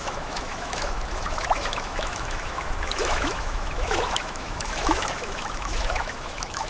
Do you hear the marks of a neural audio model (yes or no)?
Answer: yes